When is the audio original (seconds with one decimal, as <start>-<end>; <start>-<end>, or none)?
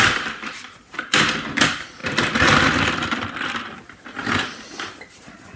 0.0-5.6